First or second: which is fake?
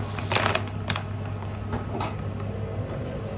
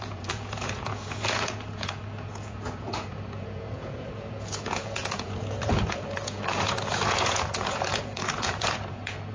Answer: second